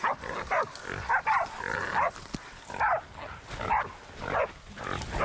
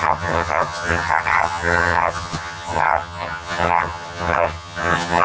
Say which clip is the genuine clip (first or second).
first